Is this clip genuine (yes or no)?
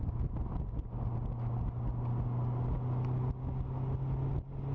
yes